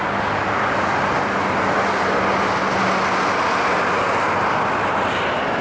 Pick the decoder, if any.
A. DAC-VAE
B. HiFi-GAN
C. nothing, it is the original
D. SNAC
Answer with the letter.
C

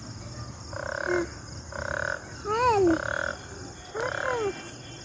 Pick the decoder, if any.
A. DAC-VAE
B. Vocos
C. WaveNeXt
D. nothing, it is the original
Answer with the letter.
D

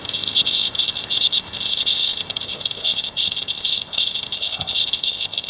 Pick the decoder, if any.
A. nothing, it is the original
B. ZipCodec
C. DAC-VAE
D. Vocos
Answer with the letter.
B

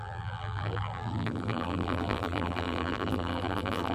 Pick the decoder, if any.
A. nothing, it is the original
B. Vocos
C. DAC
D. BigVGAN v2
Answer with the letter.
D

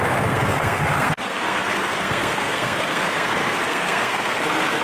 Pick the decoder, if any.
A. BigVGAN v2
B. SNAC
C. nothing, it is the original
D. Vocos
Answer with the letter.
B